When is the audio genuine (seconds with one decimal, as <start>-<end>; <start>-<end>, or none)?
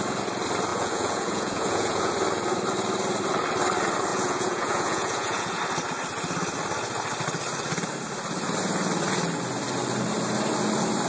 0.0-0.7; 2.1-4.1; 5.6-11.1